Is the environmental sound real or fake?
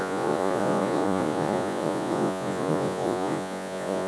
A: fake